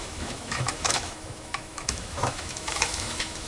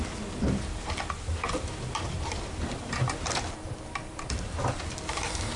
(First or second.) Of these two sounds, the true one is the second